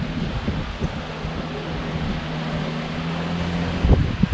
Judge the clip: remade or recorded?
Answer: recorded